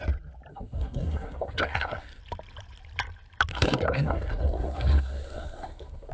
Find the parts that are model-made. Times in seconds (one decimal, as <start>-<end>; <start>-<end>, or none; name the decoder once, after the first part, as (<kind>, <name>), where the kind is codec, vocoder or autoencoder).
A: 0.5-2.2 (codec, SNAC); 3.5-6.1